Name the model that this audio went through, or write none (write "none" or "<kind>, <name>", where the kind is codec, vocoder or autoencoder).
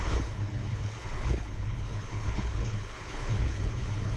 codec, HILCodec